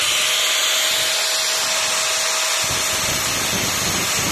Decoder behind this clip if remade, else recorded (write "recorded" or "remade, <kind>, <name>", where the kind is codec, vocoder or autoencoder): recorded